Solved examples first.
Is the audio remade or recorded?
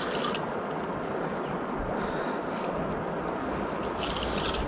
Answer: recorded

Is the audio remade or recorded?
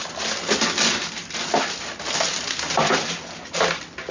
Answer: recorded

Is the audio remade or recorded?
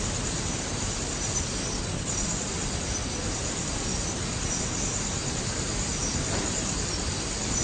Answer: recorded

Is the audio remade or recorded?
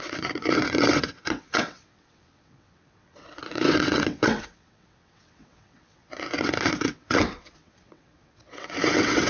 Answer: remade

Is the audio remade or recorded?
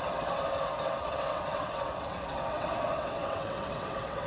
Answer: remade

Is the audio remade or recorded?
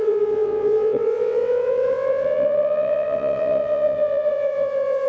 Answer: remade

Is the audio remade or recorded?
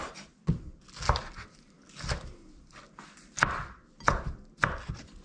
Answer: recorded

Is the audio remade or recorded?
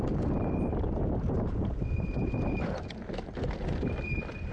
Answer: recorded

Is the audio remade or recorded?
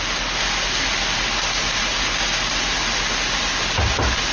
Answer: recorded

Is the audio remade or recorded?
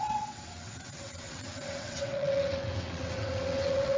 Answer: remade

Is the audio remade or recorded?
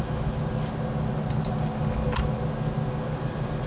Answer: recorded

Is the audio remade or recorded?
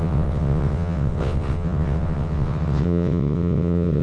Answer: remade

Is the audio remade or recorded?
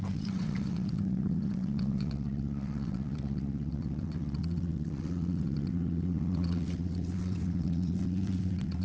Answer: remade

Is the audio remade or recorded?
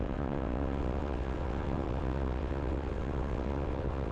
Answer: remade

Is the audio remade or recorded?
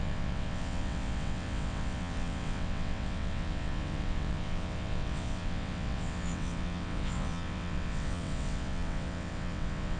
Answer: remade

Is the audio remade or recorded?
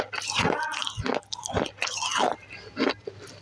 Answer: recorded